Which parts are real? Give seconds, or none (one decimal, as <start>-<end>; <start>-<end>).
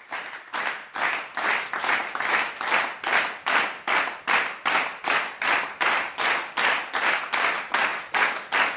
0.0-8.8